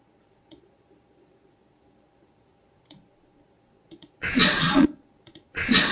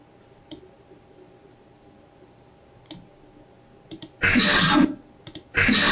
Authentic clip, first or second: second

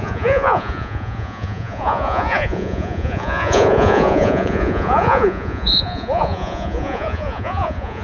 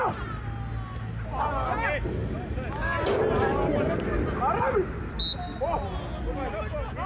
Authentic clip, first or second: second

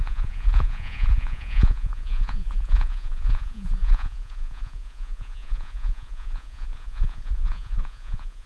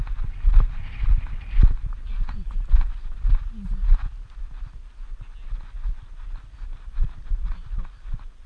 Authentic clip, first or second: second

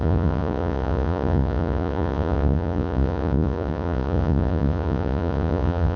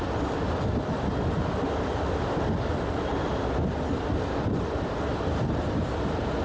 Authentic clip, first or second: second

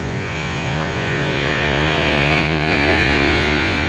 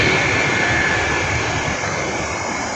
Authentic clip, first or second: second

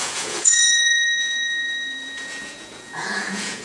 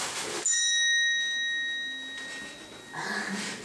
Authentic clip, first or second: second